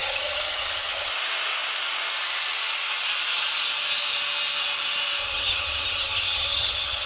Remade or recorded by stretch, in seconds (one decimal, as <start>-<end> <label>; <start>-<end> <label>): 0.0-1.1 remade; 1.1-5.2 recorded; 5.2-7.1 remade